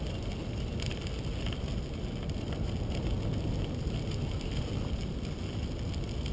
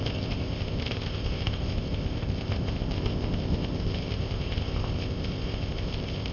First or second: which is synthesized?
second